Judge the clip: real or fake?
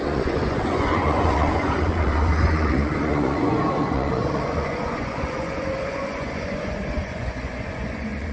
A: fake